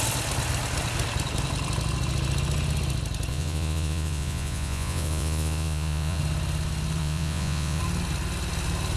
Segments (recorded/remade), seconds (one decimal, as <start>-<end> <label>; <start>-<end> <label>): 0.0-3.3 recorded; 3.3-6.2 remade; 6.2-7.0 recorded; 7.0-7.8 remade; 7.8-9.0 recorded